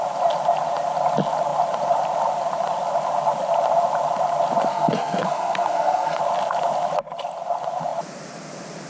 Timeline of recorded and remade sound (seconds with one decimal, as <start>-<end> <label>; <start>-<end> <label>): 0.0-4.7 recorded; 4.7-6.2 remade; 6.2-8.9 recorded